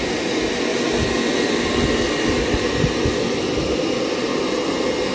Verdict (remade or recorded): recorded